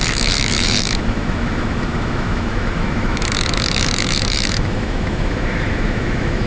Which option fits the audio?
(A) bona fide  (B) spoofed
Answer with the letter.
B